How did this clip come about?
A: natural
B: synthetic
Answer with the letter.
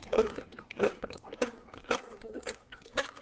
B